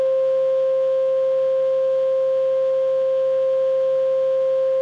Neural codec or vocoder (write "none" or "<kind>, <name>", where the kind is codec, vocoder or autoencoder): autoencoder, DAC-VAE